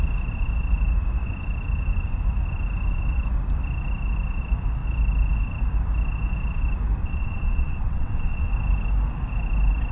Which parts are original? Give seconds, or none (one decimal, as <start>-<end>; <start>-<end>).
0.0-7.0; 8.5-9.9